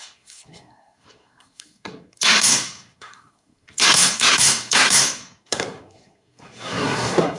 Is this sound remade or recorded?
remade